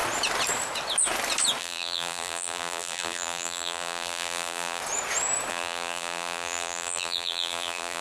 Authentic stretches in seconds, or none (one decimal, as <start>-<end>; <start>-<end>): 0.0-1.6; 4.8-5.5